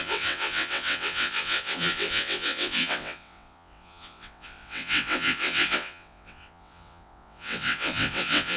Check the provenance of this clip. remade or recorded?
remade